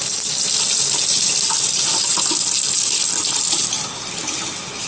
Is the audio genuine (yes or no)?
yes